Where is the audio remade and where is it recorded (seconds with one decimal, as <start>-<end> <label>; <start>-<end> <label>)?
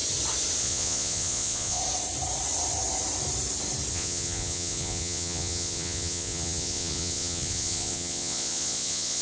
0.0-0.6 recorded; 0.6-1.8 remade; 1.8-3.9 recorded; 3.9-9.2 remade